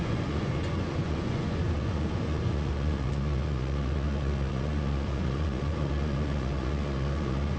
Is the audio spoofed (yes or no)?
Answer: yes